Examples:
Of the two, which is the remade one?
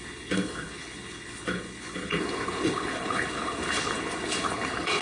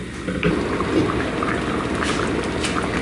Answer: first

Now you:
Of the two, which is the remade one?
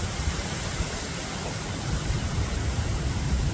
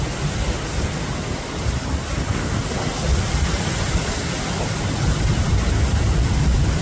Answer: first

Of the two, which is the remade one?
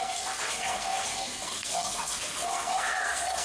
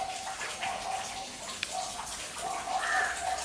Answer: first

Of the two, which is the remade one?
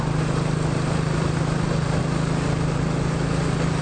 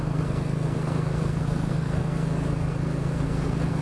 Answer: second